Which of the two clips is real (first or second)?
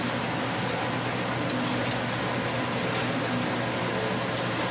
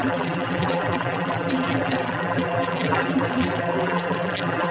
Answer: first